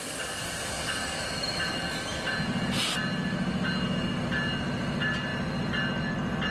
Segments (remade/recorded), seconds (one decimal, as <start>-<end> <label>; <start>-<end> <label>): 0.0-1.0 recorded; 1.0-1.7 remade; 1.7-6.5 recorded